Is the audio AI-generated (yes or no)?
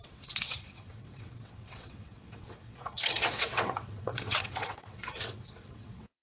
yes